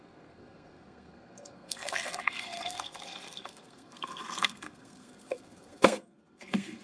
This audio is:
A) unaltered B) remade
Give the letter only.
B